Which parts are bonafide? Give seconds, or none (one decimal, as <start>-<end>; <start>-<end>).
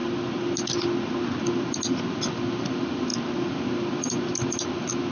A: 0.0-5.1